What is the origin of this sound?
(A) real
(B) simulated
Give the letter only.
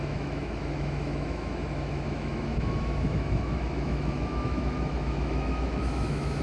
B